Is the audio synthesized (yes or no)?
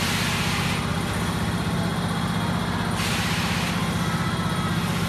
no